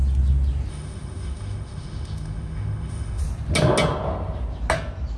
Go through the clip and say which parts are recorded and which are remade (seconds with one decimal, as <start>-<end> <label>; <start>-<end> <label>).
0.0-0.7 recorded; 0.7-3.2 remade; 3.2-5.2 recorded